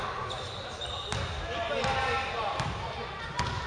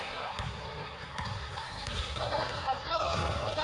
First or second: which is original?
first